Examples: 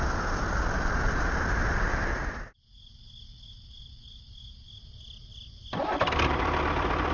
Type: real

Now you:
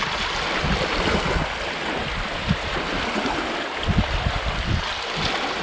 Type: real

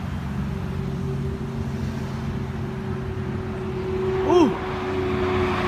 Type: real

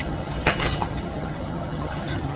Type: fake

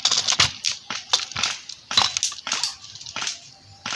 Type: real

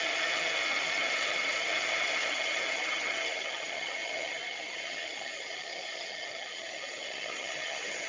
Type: fake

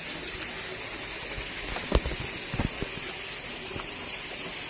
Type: real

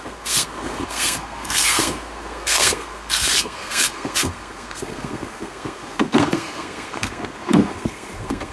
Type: fake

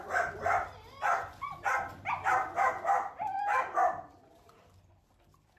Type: fake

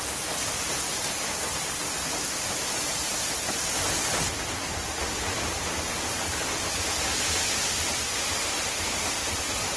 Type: fake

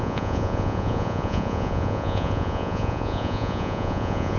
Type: fake